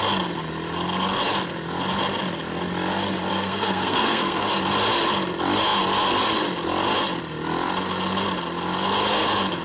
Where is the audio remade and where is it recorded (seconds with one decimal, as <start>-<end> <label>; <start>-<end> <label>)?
0.0-3.3 recorded; 3.3-4.4 remade; 4.4-9.6 recorded